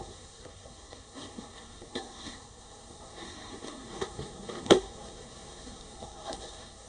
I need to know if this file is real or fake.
fake